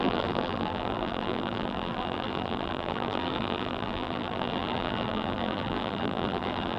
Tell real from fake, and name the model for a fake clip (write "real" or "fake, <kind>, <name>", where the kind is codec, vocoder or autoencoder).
fake, vocoder, BigVGAN v2